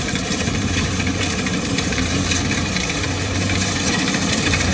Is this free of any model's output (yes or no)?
no